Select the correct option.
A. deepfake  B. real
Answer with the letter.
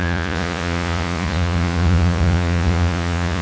A